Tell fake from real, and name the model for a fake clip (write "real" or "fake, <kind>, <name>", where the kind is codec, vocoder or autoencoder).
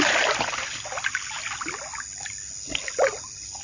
real